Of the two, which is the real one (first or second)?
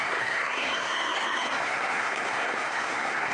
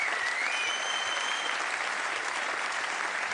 second